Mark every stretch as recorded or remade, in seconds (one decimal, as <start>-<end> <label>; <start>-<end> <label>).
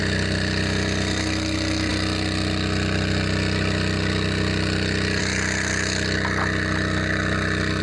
0.0-7.8 recorded